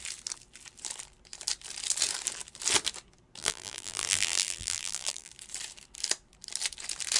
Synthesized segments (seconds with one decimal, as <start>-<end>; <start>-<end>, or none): 3.4-5.3